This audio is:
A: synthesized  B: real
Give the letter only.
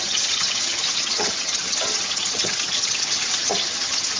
A